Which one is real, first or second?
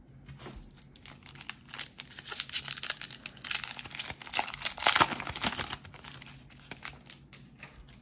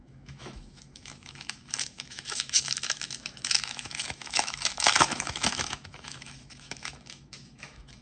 first